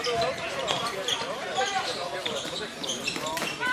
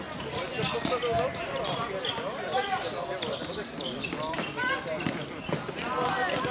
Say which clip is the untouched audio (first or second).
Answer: second